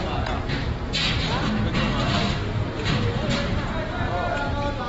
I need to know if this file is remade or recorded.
recorded